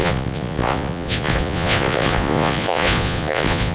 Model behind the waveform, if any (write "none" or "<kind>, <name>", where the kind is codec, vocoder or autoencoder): vocoder, Vocos